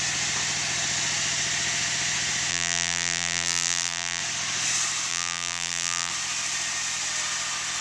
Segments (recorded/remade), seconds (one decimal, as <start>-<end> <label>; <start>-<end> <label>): 0.0-2.5 recorded; 2.5-4.2 remade; 4.2-5.1 recorded; 5.1-6.1 remade; 6.1-7.8 recorded